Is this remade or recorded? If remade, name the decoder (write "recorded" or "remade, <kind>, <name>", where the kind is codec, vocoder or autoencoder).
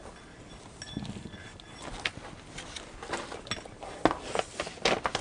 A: recorded